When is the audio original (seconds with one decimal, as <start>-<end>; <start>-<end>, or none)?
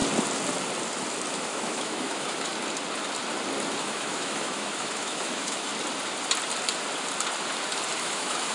0.0-1.4; 2.5-3.8; 5.7-8.0